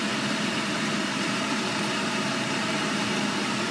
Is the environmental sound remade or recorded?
remade